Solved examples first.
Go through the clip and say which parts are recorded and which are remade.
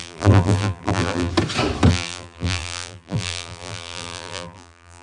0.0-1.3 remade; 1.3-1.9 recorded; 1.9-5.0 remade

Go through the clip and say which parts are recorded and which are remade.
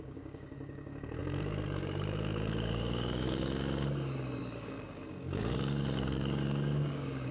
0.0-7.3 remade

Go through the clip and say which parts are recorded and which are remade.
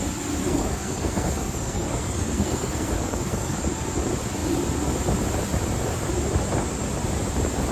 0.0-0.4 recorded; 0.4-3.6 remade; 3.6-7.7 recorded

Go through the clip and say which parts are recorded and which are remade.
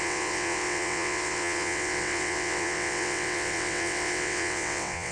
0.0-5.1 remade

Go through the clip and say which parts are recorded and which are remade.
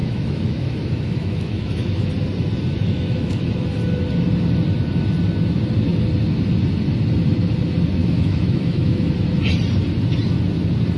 0.0-2.1 remade; 2.1-2.7 recorded; 2.7-3.5 remade; 3.5-8.0 recorded; 8.0-9.1 remade; 9.1-11.0 recorded